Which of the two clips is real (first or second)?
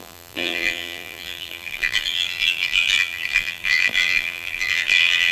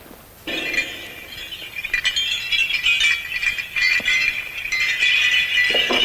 second